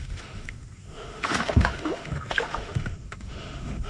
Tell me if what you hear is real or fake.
fake